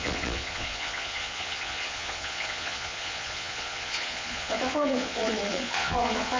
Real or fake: fake